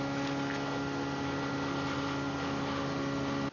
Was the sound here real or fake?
real